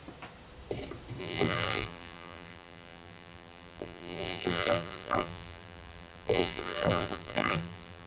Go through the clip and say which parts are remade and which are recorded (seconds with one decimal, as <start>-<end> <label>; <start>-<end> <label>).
0.0-1.2 recorded; 1.2-8.1 remade